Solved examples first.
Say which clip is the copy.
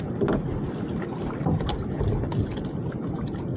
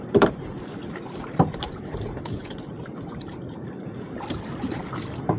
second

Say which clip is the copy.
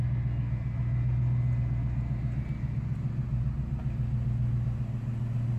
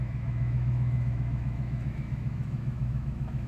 second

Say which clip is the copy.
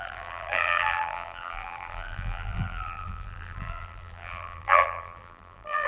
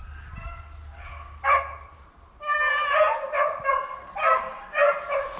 first